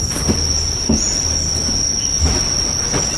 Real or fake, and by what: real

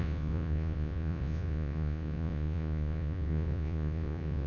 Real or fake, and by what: fake, vocoder, Vocos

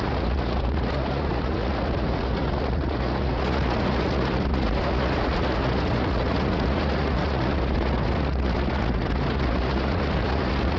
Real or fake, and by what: fake, vocoder, Vocos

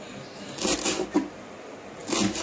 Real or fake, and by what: real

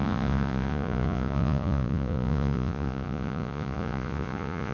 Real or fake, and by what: fake, vocoder, Vocos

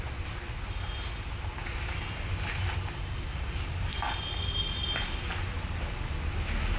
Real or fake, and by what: real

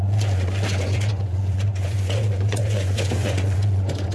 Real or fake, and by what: fake, vocoder, Vocos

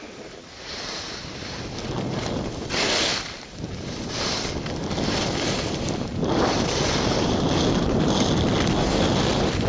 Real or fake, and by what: real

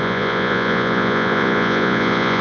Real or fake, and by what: fake, vocoder, Vocos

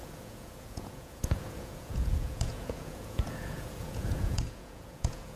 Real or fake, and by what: fake, vocoder, Vocos